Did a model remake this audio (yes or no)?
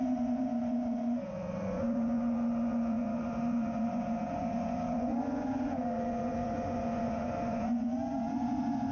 yes